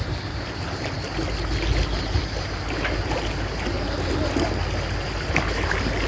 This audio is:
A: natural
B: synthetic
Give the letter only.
A